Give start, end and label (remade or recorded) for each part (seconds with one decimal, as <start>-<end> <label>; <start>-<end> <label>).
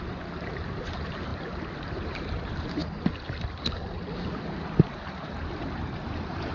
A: 0.0-2.8 remade; 2.8-4.6 recorded; 4.6-6.5 remade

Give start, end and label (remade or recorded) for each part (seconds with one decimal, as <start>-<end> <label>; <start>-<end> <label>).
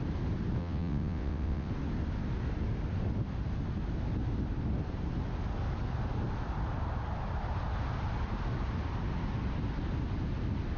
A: 0.0-0.6 recorded; 0.6-1.7 remade; 1.7-10.8 recorded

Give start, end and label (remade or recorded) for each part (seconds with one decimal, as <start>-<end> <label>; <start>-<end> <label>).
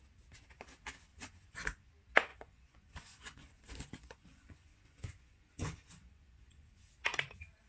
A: 0.0-1.1 recorded; 1.1-1.9 remade; 1.9-2.3 recorded; 2.3-6.9 remade; 6.9-7.7 recorded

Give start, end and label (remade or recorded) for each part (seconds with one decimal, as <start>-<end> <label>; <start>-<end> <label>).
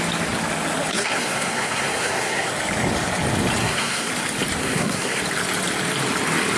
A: 0.0-0.9 recorded; 0.9-2.5 remade; 2.5-3.6 recorded; 3.6-4.1 remade; 4.1-4.6 recorded; 4.6-5.2 remade; 5.2-6.6 recorded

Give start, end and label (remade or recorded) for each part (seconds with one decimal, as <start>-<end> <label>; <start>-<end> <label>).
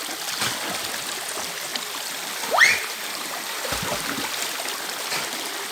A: 0.0-2.7 recorded; 2.7-3.8 remade; 3.8-5.7 recorded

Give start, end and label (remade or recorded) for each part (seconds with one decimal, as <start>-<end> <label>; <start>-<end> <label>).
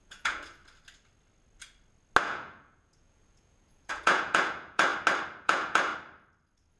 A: 0.0-0.6 remade; 0.6-2.2 recorded; 2.2-4.9 remade; 4.9-5.4 recorded; 5.4-5.9 remade; 5.9-6.8 recorded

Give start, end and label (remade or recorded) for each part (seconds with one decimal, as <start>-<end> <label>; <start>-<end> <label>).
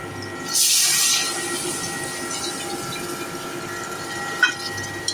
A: 0.0-3.8 recorded; 3.8-4.5 remade; 4.5-5.1 recorded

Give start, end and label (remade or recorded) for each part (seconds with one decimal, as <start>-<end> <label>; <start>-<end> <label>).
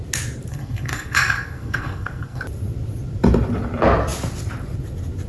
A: 0.0-0.5 recorded; 0.5-2.4 remade; 2.4-5.3 recorded